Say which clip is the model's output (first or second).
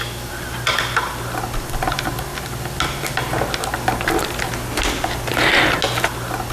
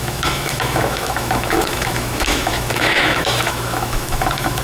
second